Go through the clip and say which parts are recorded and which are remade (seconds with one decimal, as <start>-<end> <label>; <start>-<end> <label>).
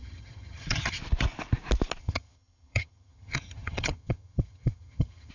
0.0-1.0 remade; 1.0-2.0 recorded; 2.0-5.3 remade